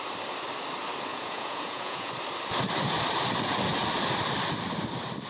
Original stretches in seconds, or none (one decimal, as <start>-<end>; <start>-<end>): 0.0-1.1; 2.1-5.3